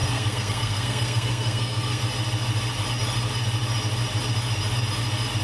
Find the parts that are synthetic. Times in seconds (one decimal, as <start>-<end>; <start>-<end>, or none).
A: 0.0-2.0